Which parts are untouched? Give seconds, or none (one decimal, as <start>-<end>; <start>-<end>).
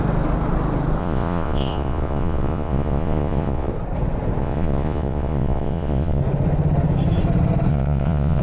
0.0-1.0; 3.7-4.4; 6.2-7.7